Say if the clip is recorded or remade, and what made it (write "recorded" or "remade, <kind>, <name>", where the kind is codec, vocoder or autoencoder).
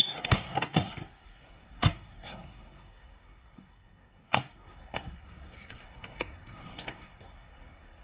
remade, codec, SNAC